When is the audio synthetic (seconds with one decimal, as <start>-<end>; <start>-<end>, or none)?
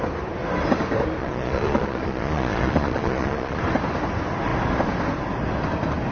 1.2-3.6